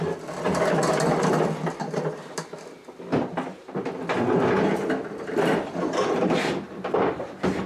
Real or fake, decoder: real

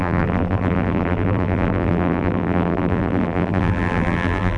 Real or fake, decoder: fake, vocoder, BigVGAN v2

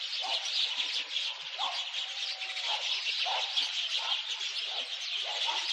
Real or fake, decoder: real